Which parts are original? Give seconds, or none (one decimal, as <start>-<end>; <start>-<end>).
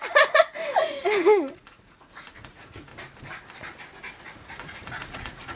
2.9-4.2